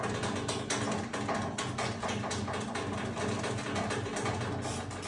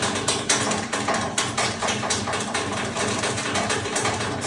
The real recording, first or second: first